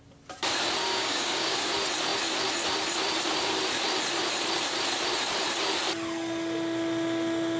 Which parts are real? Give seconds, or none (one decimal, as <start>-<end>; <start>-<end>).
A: 0.0-0.9; 1.7-7.6